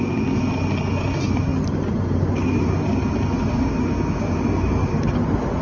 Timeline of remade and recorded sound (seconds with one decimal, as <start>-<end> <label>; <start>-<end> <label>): 0.0-5.6 recorded